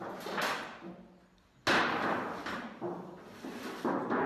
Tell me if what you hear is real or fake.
real